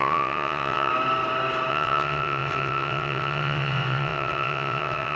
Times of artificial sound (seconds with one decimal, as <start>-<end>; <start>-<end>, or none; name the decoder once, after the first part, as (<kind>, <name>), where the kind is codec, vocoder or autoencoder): 0.0-0.9 (vocoder, WaveNeXt); 1.7-5.2